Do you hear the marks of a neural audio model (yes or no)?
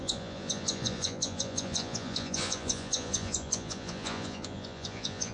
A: yes